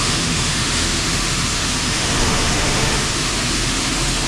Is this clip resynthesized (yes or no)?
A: yes